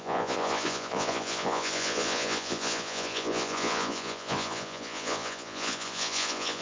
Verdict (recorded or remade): remade